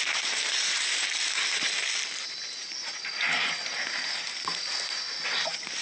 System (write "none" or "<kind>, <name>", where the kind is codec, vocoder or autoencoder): none